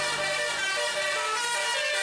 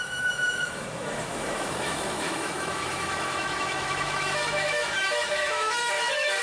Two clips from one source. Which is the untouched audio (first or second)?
first